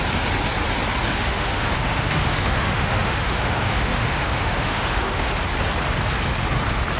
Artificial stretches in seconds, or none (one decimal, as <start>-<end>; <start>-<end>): 1.1-5.3